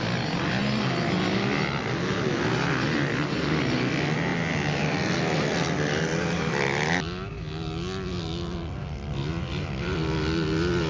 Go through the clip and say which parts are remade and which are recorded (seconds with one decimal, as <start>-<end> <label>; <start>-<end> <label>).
0.0-10.9 recorded